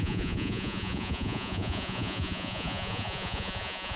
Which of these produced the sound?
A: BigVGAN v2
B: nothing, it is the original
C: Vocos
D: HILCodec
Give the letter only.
C